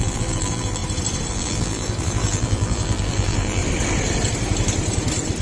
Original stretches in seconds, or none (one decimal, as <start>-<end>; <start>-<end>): 0.8-1.3; 3.6-5.4